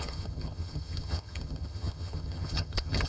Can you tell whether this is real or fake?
fake